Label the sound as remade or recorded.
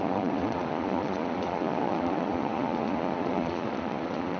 remade